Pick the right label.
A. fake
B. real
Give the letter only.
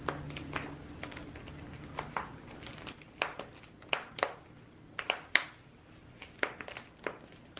B